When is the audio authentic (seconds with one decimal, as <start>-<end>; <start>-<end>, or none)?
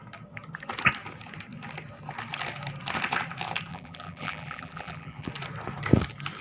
0.0-3.7; 5.3-6.4